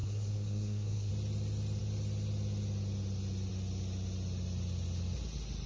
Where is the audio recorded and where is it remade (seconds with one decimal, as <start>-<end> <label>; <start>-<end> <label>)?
0.0-1.1 remade; 1.1-5.7 recorded